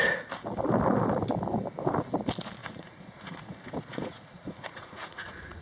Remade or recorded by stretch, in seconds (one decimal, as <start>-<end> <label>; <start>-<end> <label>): 0.0-2.6 recorded; 2.6-5.6 remade